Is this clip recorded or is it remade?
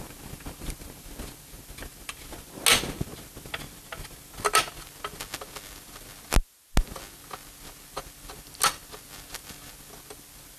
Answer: recorded